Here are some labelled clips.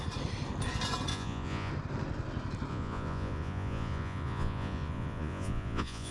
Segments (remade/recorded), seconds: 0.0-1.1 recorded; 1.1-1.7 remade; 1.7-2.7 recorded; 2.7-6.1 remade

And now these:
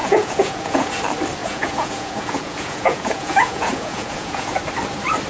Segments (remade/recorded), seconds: 0.0-0.9 remade; 0.9-1.4 recorded; 1.4-4.6 remade; 4.6-5.3 recorded